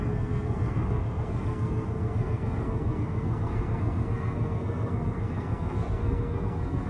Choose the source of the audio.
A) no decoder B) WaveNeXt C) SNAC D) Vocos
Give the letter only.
C